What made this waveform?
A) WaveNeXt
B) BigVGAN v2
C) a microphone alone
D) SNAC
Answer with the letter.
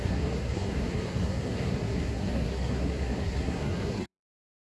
D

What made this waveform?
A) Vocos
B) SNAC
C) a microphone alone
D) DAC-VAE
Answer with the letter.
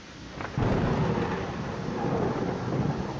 C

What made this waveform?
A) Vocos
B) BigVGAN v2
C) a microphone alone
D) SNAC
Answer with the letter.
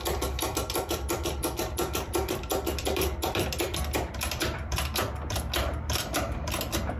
B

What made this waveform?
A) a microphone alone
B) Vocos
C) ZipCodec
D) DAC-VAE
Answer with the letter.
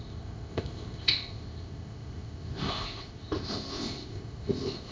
C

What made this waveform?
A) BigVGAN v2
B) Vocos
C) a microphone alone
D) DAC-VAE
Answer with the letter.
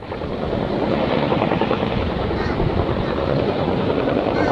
B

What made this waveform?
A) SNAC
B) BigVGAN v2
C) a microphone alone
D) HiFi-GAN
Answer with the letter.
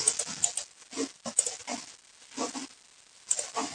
C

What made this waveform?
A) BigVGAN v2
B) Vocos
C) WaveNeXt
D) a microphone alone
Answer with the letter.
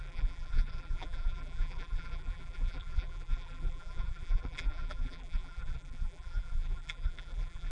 A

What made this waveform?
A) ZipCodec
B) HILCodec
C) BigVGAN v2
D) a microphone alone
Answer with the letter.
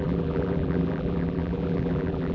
C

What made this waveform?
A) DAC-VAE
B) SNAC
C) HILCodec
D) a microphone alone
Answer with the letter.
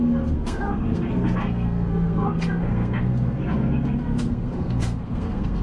B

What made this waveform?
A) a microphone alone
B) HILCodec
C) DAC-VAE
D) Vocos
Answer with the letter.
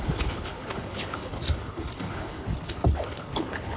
B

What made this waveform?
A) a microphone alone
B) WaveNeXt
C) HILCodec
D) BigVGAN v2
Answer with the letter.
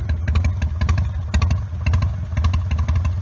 A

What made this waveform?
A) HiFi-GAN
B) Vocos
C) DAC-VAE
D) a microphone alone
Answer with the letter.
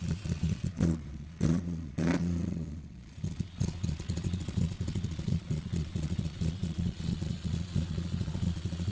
B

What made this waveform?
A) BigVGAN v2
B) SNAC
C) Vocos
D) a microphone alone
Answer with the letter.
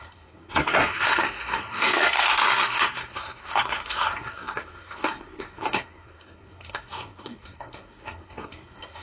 B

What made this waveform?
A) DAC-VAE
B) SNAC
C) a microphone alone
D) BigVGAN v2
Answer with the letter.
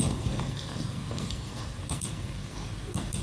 B